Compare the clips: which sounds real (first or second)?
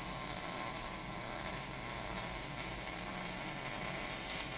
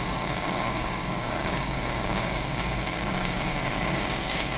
first